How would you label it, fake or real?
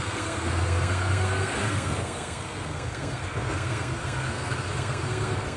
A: fake